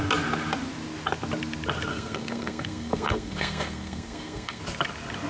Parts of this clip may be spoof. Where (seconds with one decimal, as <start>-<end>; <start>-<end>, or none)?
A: 1.9-4.6